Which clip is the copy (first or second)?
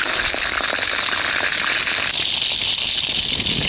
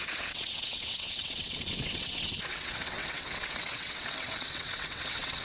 second